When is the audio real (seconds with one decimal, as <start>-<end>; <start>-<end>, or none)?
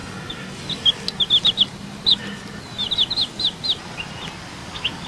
0.0-4.6